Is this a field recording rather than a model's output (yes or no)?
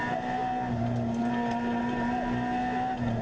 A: yes